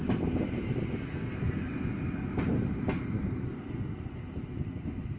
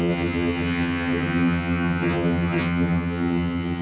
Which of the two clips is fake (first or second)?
second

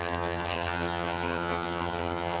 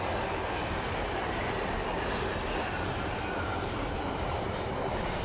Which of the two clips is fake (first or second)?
first